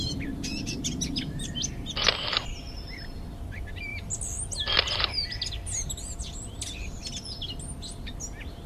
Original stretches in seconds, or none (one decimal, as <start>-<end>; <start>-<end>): 0.0-8.7